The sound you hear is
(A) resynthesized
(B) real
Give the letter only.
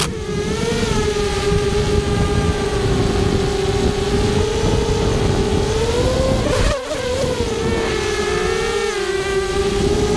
B